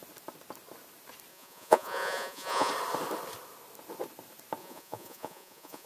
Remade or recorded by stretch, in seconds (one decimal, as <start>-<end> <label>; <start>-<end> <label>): 0.0-1.3 recorded; 1.3-2.7 remade; 2.7-4.6 recorded; 4.6-5.9 remade